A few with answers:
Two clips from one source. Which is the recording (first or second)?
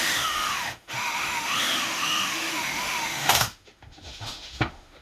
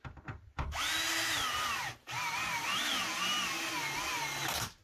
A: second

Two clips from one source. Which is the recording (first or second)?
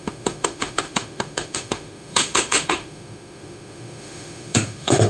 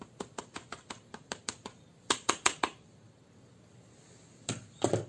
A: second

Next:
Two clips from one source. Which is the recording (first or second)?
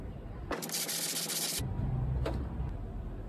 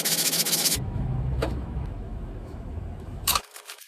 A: first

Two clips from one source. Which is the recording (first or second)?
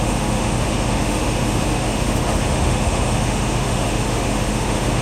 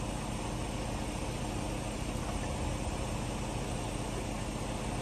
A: second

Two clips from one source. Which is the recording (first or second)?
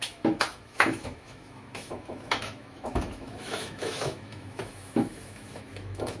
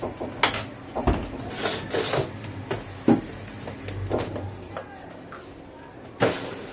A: second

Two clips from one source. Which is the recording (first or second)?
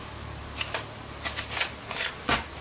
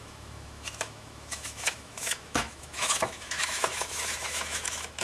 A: first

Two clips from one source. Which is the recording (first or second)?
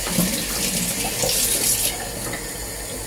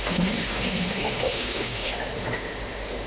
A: first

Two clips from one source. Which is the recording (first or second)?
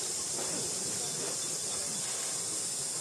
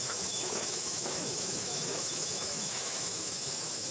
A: first